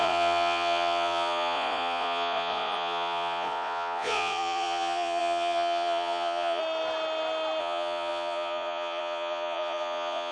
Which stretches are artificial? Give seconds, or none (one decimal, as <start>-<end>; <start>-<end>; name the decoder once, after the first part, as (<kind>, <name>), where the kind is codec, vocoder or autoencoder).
0.0-6.6 (vocoder, Vocos); 7.6-10.3